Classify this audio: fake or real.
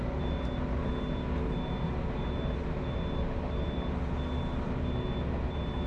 real